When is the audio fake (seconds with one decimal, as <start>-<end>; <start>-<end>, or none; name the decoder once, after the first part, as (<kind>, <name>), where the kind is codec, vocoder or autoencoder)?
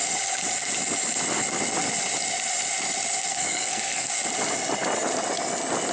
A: 3.3-4.1 (codec, SNAC)